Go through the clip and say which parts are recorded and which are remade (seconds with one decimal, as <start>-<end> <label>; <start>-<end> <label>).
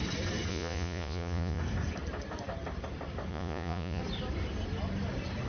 0.0-0.5 recorded; 0.5-1.6 remade; 1.6-3.3 recorded; 3.3-4.0 remade; 4.0-5.5 recorded